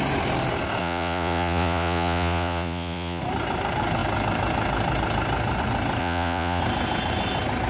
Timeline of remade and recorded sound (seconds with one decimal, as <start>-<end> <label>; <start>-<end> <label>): 0.0-0.8 recorded; 0.8-3.2 remade; 3.2-6.0 recorded; 6.0-6.6 remade; 6.6-7.7 recorded